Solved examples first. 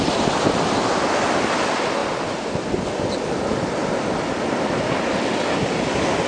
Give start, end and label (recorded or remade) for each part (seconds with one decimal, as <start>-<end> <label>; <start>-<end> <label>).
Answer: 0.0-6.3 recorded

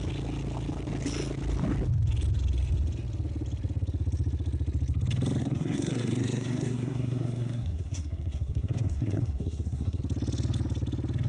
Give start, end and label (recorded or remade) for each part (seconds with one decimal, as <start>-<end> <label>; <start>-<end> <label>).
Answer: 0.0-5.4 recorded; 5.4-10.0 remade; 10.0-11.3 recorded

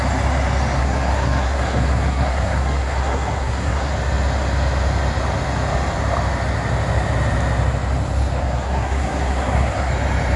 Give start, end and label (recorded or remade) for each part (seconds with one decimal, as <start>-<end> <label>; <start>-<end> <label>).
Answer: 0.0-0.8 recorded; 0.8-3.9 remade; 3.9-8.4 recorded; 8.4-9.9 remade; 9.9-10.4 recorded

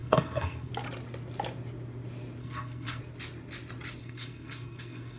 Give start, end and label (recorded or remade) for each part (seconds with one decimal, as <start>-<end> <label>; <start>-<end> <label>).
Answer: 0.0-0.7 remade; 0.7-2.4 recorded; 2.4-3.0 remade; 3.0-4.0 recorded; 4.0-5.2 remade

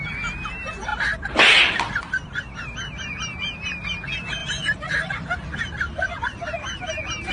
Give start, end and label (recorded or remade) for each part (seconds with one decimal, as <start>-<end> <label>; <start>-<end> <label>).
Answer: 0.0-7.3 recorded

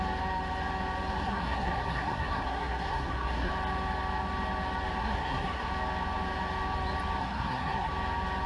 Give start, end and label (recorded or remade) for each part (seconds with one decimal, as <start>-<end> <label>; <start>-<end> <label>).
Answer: 0.0-1.2 recorded; 1.2-3.5 remade; 3.5-5.0 recorded; 5.0-5.7 remade; 5.7-7.2 recorded; 7.2-7.9 remade; 7.9-8.5 recorded